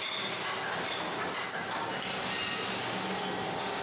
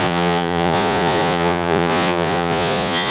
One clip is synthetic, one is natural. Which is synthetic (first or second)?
second